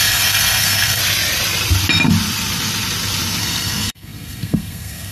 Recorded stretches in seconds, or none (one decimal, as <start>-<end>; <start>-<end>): 1.0-3.4